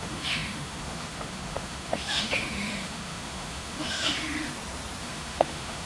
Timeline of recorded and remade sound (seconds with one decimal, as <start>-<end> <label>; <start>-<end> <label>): 0.0-4.5 remade; 4.5-5.0 recorded; 5.0-5.9 remade

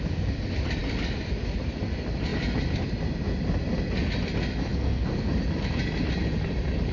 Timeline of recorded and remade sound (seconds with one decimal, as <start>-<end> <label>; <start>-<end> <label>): 0.0-4.7 recorded; 4.7-5.3 remade; 5.3-6.9 recorded

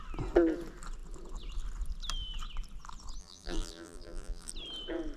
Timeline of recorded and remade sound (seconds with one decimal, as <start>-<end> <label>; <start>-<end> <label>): 0.0-3.2 recorded; 3.2-4.5 remade; 4.5-5.2 recorded

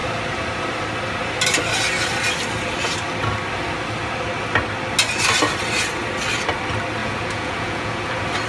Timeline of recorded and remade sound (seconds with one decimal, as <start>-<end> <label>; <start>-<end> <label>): 0.0-7.0 recorded; 7.0-8.1 remade; 8.1-8.5 recorded

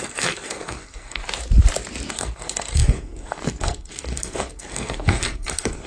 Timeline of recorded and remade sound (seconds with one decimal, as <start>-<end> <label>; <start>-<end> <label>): 0.0-1.2 remade; 1.2-2.1 recorded; 2.1-5.9 remade

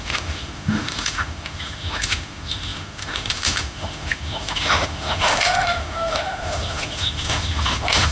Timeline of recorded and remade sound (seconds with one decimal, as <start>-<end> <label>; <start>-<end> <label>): 0.0-8.1 remade

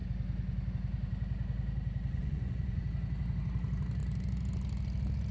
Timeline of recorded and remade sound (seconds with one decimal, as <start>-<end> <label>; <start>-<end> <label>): 0.0-2.2 recorded; 2.2-2.8 remade; 2.8-5.3 recorded

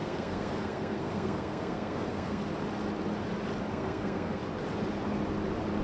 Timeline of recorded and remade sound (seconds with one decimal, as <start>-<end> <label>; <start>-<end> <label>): 0.0-2.4 remade; 2.4-3.7 recorded; 3.7-4.4 remade; 4.4-5.8 recorded